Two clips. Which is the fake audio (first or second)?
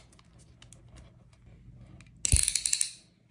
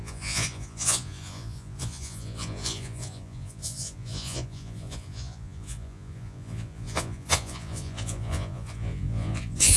second